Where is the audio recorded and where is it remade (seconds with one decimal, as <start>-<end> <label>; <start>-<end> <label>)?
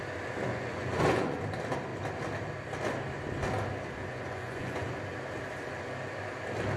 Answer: 0.0-0.5 recorded; 0.5-1.4 remade; 1.4-4.0 recorded; 4.0-5.0 remade; 5.0-6.8 recorded